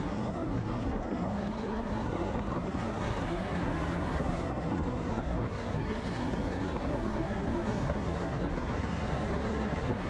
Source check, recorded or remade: remade